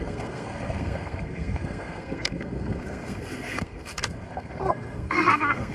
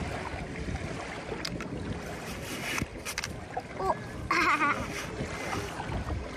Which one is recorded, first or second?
second